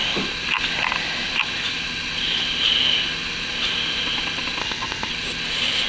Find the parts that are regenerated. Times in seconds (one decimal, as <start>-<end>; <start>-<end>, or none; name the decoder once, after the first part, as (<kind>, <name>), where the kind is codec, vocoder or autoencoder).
4.6-5.1 (codec, ZipCodec)